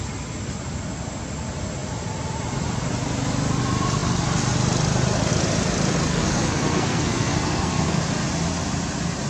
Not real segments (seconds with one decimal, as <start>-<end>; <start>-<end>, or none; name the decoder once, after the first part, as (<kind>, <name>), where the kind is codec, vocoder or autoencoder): 6.1-8.0 (codec, SNAC)